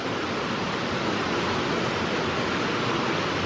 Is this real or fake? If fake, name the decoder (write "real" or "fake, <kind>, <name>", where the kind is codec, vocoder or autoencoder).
real